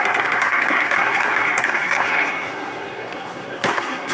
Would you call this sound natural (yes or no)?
no